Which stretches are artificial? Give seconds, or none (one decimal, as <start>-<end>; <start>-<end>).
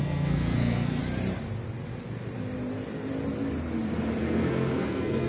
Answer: 0.0-1.0; 4.2-5.3